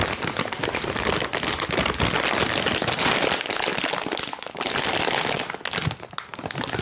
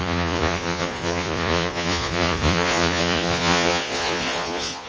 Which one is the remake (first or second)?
second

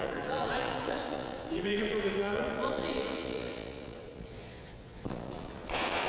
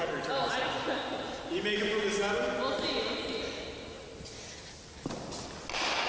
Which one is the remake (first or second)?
first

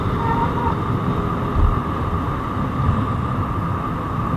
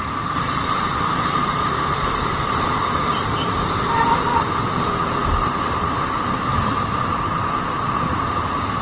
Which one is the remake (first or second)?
second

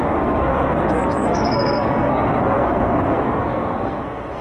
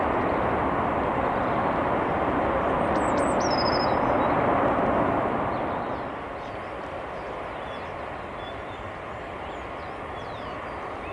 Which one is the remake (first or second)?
first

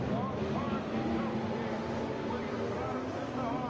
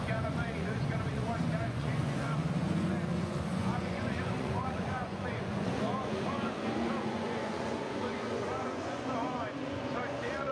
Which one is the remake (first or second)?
second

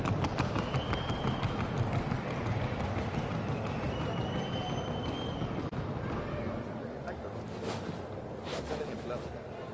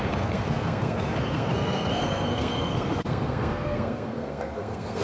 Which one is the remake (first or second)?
second